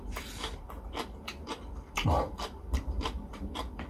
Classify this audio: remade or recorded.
remade